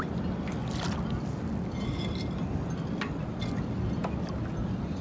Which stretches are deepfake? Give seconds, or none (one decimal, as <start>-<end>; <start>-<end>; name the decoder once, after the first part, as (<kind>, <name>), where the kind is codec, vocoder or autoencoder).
none